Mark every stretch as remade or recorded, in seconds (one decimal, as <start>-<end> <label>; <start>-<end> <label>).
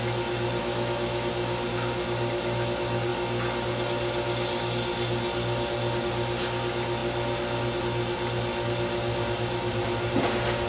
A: 0.0-0.6 recorded; 0.6-1.3 remade; 1.3-10.7 recorded